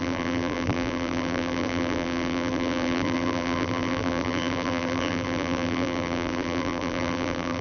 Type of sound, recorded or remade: remade